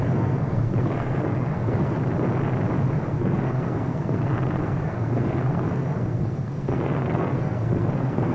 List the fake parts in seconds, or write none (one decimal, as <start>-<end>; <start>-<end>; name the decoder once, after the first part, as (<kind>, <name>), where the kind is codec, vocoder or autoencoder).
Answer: 0.0-2.0 (codec, SNAC); 3.1-8.3